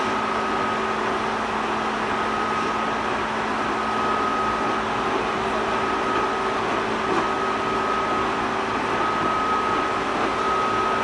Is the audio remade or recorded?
recorded